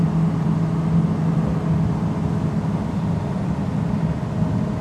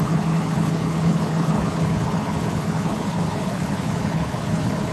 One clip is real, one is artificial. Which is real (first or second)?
first